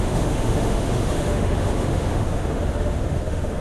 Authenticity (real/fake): fake